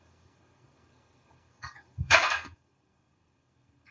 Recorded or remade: remade